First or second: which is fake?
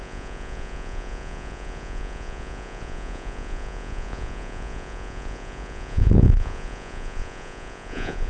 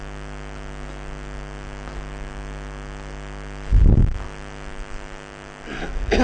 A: first